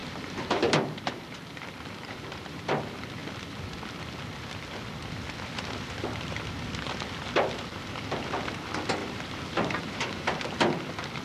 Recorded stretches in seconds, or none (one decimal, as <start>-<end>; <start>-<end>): 2.6-9.0; 10.4-11.2